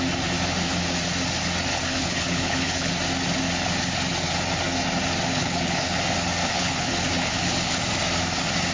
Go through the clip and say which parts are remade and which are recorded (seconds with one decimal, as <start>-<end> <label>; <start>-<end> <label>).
0.0-1.7 recorded; 1.7-2.9 remade; 2.9-5.4 recorded; 5.4-6.0 remade; 6.0-6.4 recorded; 6.4-7.8 remade; 7.8-8.7 recorded

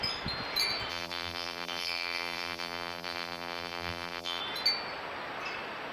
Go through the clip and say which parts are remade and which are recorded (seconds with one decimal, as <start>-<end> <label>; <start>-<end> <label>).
0.0-0.9 recorded; 0.9-4.4 remade; 4.4-5.9 recorded